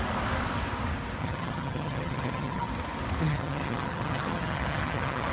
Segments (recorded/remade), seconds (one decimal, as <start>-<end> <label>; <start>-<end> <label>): 0.0-1.2 recorded; 1.2-2.7 remade; 2.7-3.3 recorded; 3.3-5.3 remade